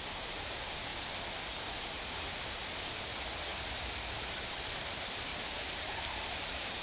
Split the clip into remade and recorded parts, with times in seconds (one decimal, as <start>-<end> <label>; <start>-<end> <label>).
0.0-3.5 remade; 3.5-4.1 recorded; 4.1-6.8 remade